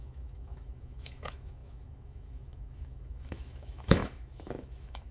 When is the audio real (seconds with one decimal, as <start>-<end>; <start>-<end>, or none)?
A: none